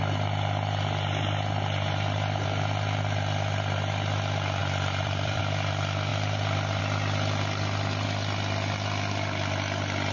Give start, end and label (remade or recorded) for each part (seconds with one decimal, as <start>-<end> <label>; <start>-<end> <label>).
0.0-4.6 recorded; 4.6-5.4 remade; 5.4-10.1 recorded